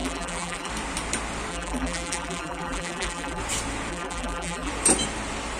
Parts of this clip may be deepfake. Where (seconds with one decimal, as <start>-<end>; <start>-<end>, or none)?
0.0-0.7; 1.5-3.4; 3.9-4.7